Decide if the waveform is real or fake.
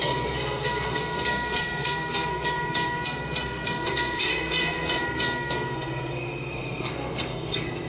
fake